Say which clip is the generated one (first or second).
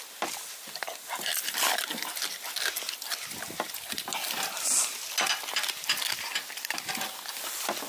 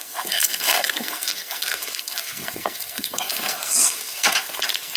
second